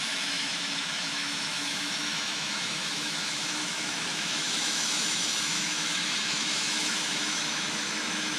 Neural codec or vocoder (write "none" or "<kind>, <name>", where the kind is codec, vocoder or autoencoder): autoencoder, DAC-VAE